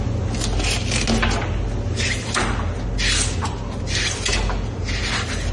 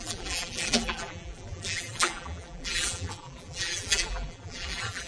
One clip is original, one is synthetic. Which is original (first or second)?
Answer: first